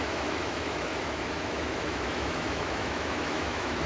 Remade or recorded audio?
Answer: remade